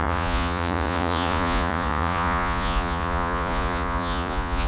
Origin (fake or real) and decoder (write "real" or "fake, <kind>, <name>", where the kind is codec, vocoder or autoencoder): fake, vocoder, Vocos